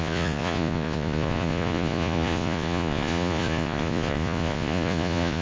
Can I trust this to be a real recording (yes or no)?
no